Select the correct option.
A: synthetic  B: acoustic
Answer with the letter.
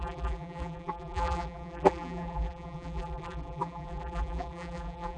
A